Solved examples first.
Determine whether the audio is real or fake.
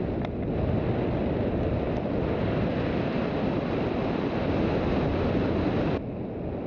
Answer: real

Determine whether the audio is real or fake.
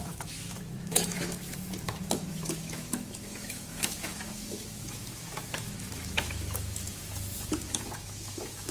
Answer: fake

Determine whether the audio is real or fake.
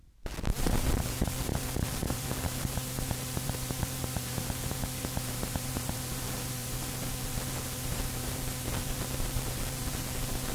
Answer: fake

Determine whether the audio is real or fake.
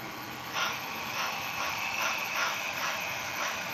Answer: fake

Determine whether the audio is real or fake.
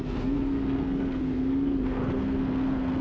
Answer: fake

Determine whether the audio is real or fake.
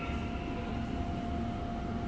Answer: real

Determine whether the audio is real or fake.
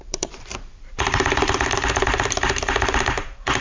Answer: fake